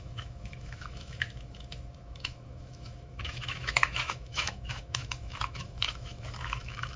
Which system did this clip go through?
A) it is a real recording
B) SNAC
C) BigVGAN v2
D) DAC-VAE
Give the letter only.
D